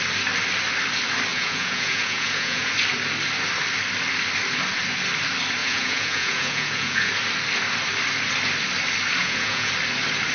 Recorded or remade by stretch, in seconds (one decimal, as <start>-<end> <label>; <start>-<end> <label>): 0.0-1.3 recorded; 1.3-2.7 remade; 2.7-5.6 recorded; 5.6-7.1 remade; 7.1-9.2 recorded; 9.2-9.7 remade; 9.7-10.3 recorded

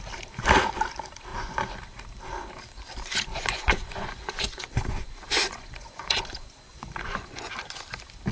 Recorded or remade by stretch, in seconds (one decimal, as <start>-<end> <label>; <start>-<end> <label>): 0.0-1.3 recorded; 1.3-1.8 remade; 1.8-3.3 recorded; 3.3-7.5 remade; 7.5-8.3 recorded

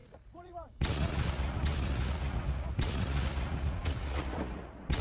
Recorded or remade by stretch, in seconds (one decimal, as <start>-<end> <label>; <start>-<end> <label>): 0.0-5.0 remade